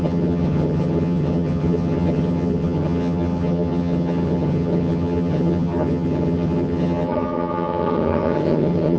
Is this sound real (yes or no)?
no